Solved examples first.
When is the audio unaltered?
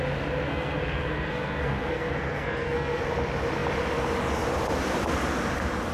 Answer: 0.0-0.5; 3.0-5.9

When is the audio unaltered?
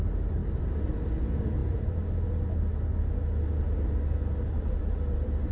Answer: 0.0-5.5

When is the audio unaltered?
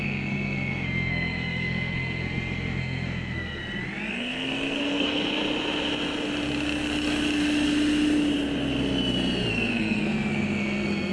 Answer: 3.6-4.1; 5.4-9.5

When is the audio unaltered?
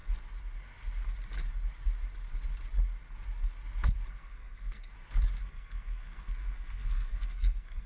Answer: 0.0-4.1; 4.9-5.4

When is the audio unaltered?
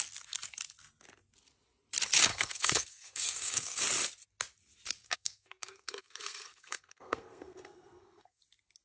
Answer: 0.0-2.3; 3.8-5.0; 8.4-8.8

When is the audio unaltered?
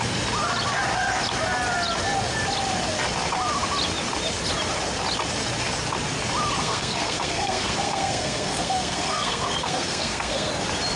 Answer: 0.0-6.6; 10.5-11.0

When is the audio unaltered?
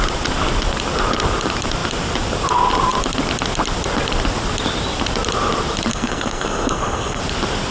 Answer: 0.0-5.9; 7.2-7.7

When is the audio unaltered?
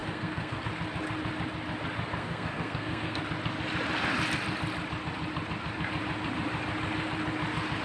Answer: 0.6-2.2; 3.2-7.8